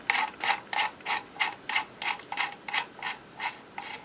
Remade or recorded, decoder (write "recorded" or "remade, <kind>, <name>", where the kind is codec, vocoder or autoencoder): recorded